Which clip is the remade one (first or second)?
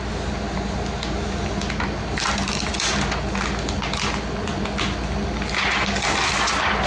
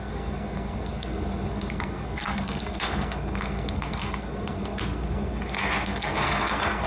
second